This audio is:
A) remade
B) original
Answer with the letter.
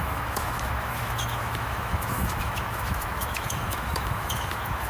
A